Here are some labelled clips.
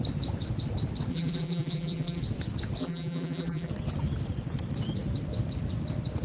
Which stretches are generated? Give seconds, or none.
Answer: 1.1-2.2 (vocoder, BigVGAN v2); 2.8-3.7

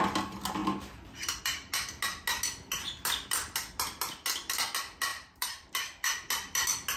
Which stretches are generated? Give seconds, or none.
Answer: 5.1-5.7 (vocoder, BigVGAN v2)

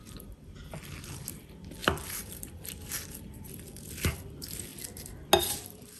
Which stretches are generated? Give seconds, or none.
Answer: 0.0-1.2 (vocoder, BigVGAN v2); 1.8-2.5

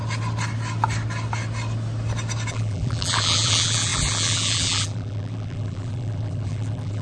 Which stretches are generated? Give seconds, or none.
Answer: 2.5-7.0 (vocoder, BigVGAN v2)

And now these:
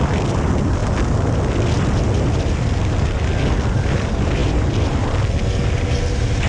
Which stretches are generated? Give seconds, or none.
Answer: 4.4-5.0 (vocoder, BigVGAN v2)